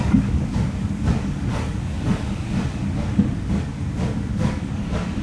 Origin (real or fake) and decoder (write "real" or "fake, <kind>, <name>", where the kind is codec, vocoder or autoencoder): fake, codec, DAC